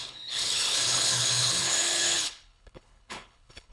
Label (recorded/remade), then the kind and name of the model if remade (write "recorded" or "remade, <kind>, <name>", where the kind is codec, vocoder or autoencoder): remade, codec, HILCodec